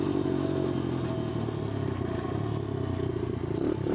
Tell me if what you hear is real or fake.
real